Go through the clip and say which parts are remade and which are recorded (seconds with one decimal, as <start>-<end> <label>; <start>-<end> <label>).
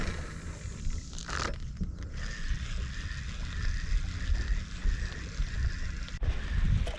0.0-7.0 recorded